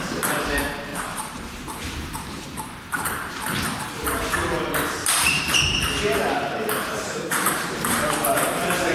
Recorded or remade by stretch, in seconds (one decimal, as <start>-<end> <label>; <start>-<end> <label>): 0.0-8.9 remade